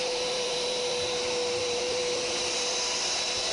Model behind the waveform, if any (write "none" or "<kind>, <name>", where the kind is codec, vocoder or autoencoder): vocoder, BigVGAN v2